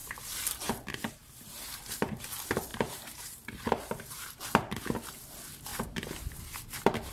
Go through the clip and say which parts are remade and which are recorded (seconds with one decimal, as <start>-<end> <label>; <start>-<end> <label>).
0.0-0.7 remade; 0.7-1.2 recorded; 1.2-2.2 remade; 2.2-2.7 recorded; 2.7-4.4 remade; 4.4-5.7 recorded; 5.7-7.1 remade